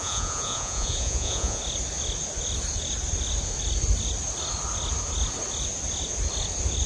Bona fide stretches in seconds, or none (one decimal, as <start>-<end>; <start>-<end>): 1.6-6.9